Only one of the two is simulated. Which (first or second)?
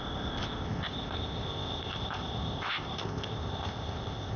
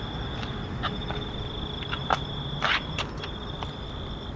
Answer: first